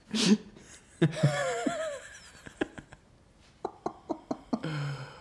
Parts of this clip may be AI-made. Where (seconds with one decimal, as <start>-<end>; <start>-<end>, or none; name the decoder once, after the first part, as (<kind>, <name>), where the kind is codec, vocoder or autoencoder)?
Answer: none